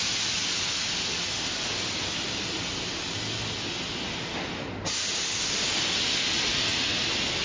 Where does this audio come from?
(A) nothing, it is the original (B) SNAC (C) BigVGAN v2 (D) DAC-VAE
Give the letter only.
A